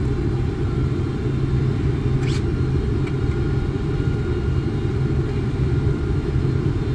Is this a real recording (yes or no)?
yes